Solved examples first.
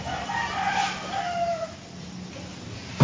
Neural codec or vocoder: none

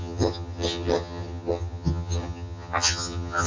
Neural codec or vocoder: vocoder, HiFi-GAN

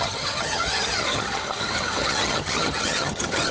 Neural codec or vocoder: vocoder, HiFi-GAN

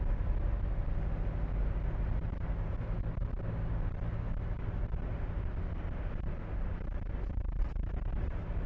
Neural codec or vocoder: none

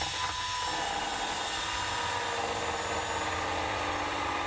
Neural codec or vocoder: none